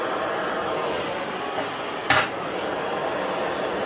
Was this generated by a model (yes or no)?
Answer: no